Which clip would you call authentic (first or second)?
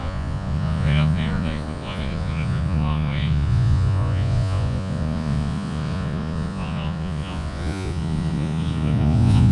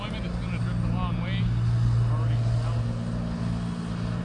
second